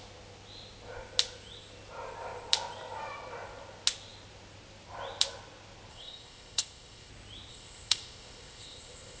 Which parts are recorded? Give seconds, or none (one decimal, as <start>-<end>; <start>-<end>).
0.0-5.9; 7.1-7.5